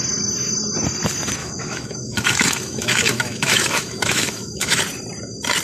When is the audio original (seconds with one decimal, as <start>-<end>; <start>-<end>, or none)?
0.0-1.4; 4.8-5.6